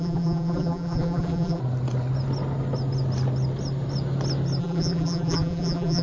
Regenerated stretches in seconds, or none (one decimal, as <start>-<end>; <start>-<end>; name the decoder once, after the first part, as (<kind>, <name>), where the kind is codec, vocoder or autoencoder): 0.0-1.6 (vocoder, BigVGAN v2); 4.6-6.0

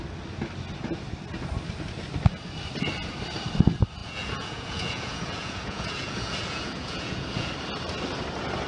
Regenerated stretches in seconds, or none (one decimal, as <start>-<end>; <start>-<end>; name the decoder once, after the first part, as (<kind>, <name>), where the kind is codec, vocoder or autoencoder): 4.0-7.5 (vocoder, Vocos)